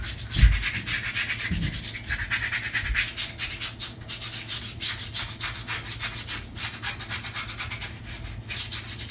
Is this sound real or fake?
real